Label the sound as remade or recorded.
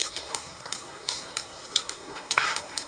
remade